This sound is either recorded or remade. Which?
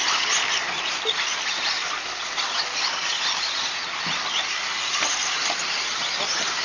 recorded